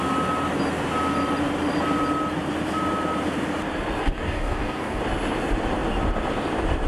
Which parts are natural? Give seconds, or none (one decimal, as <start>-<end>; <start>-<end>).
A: 0.0-4.0; 5.0-6.9

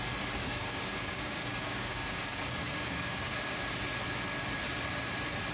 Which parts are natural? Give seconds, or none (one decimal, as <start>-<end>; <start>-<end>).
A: 0.0-0.4; 3.7-5.5

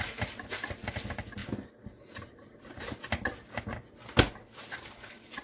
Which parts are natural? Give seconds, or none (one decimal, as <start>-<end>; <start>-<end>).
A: 0.0-5.4

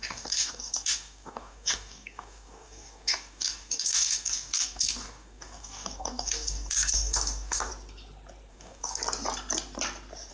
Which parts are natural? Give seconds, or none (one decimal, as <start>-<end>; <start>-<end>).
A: 7.7-8.5; 9.0-10.3

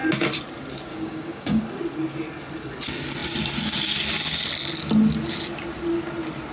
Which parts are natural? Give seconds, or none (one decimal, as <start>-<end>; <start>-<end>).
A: 0.0-0.9; 1.6-6.5

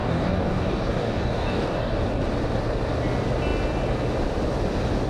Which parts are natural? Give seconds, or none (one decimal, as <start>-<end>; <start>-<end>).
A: 2.0-5.1

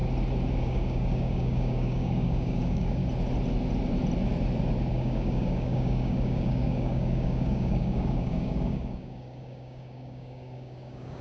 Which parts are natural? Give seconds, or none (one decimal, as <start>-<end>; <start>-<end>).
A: 0.0-0.6; 3.0-4.9

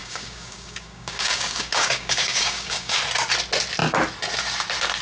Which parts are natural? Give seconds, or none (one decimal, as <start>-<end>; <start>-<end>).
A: 3.0-5.0